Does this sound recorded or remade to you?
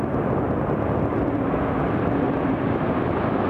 recorded